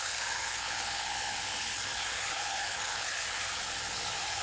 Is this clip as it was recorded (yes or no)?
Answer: no